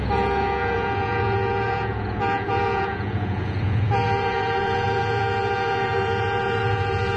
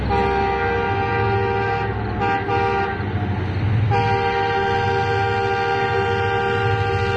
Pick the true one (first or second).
second